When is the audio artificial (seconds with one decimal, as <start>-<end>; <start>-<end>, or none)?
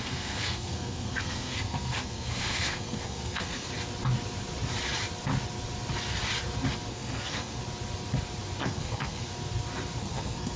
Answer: 0.0-3.7; 6.9-7.6; 8.6-9.3; 10.0-10.6